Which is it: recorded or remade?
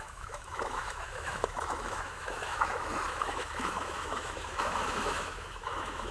remade